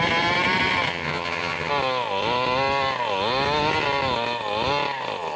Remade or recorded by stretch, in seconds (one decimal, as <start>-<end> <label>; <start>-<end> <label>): 0.0-0.9 recorded; 0.9-1.7 remade; 1.7-5.4 recorded